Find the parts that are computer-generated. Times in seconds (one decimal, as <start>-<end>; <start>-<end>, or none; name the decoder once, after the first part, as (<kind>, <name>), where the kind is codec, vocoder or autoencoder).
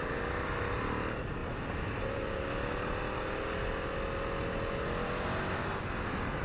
none